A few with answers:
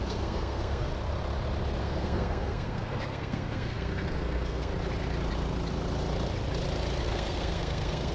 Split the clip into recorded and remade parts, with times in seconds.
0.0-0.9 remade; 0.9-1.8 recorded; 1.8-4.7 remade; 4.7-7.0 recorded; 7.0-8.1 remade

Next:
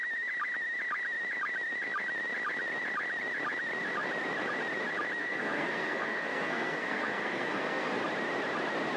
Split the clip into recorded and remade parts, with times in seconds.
0.0-5.2 recorded; 5.2-7.9 remade; 7.9-9.0 recorded